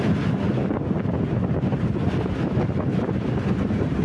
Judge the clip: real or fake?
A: real